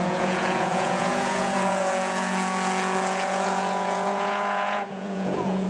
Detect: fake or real fake